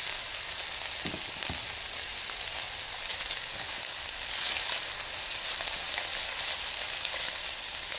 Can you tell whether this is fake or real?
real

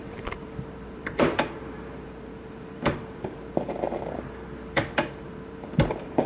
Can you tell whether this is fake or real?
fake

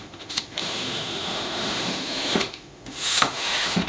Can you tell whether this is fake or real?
fake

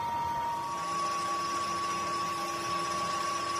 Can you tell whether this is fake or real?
real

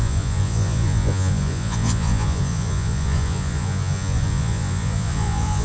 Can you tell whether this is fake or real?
fake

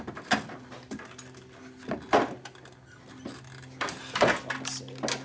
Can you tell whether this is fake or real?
real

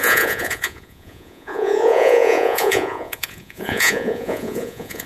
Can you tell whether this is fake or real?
fake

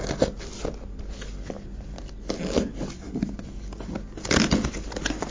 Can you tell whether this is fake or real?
real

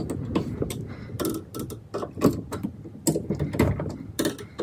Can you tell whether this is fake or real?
real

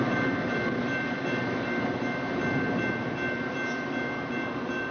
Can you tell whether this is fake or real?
real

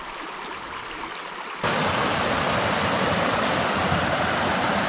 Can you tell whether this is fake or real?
real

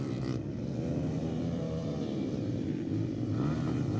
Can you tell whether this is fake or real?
fake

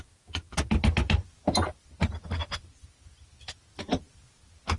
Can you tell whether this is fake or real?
real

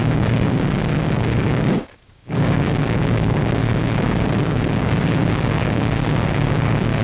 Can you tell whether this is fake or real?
fake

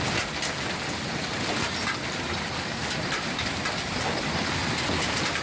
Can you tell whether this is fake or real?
real